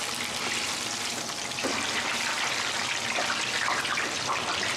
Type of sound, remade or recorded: recorded